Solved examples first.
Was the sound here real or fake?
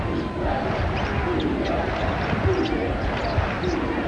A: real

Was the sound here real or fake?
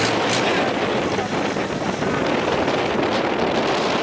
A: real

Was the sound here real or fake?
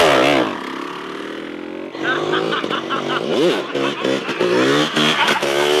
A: real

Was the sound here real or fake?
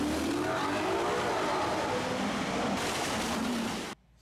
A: real